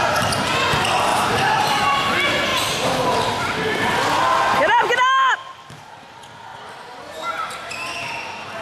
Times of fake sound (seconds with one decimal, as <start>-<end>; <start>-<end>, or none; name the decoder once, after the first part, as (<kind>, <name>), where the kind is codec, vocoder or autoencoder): 1.1-1.8 (vocoder, BigVGAN v2); 2.5-3.3